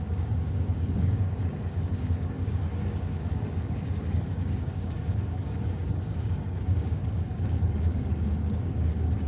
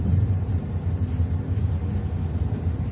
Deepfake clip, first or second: first